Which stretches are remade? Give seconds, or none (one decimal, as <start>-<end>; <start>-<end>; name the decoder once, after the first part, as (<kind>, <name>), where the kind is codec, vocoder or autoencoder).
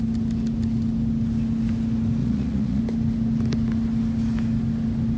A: 2.2-2.8 (vocoder, Vocos)